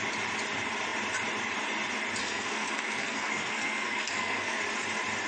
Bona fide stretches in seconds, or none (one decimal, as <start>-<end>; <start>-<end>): 0.0-2.2; 4.6-5.3